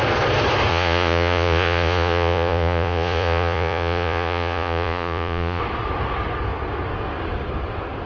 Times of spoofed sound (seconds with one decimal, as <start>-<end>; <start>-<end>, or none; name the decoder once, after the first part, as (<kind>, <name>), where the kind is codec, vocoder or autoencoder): 0.7-5.6 (vocoder, Vocos)